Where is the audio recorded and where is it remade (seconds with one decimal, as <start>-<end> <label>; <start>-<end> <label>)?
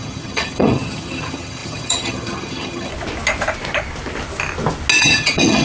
0.0-2.9 remade; 2.9-5.0 recorded; 5.0-5.6 remade